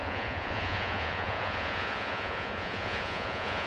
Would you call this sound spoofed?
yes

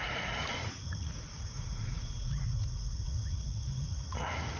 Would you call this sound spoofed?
yes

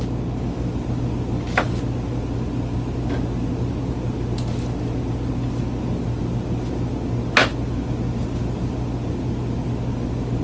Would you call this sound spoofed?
no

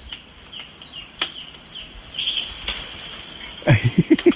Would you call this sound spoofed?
no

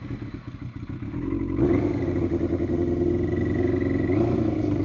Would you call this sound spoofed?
no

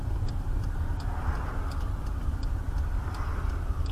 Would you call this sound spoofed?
no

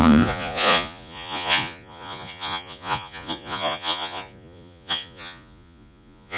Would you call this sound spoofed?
yes